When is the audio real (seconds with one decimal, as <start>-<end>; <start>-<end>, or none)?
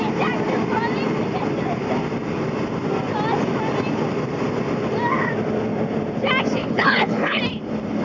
0.0-6.6; 7.4-8.0